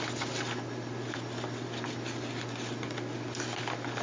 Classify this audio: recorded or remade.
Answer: recorded